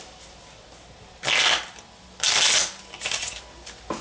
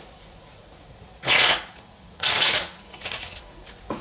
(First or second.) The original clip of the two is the first